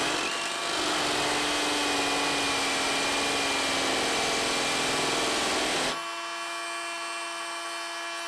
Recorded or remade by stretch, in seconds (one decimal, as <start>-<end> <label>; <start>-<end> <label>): 0.0-8.3 recorded